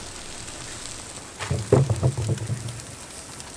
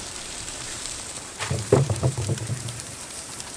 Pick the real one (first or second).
first